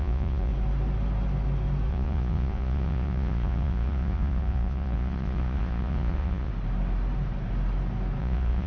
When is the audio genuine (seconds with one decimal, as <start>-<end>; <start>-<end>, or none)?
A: 0.5-1.9; 6.5-8.2